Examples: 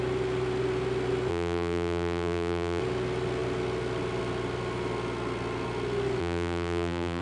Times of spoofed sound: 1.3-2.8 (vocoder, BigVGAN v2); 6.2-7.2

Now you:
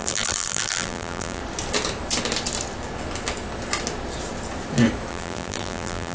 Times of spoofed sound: 0.0-1.4 (vocoder, BigVGAN v2); 5.1-6.1

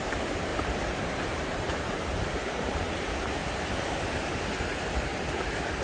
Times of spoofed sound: 0.0-3.4 (vocoder, BigVGAN v2); 4.6-5.1

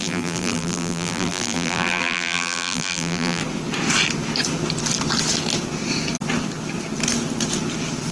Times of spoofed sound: 0.0-3.4 (vocoder, BigVGAN v2)